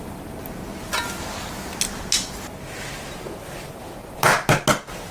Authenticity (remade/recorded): recorded